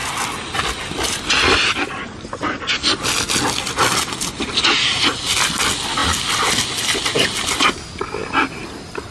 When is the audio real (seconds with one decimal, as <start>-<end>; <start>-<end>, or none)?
0.0-9.1